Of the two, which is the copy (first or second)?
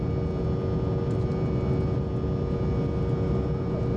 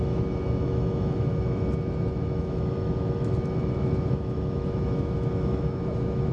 second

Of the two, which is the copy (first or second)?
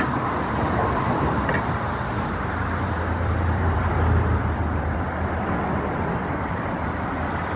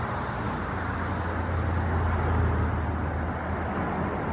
first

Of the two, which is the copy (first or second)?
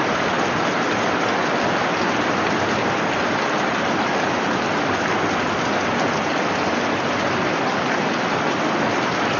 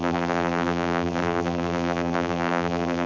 second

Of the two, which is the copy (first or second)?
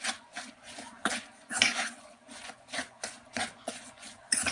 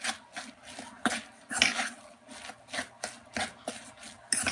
first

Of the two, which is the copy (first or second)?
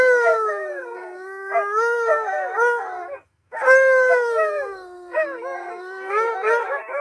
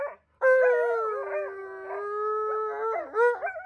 first